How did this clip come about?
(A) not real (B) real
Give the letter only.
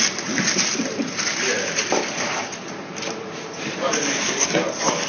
B